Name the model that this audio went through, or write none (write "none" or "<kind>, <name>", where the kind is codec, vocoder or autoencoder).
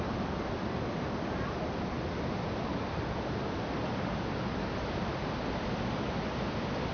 none